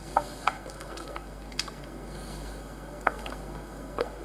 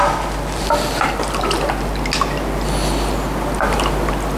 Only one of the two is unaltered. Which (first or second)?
second